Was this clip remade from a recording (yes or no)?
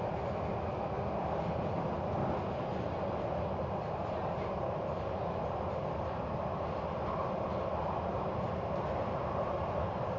no